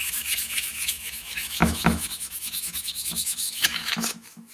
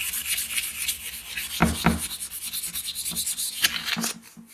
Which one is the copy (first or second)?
first